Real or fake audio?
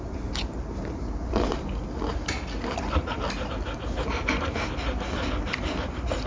real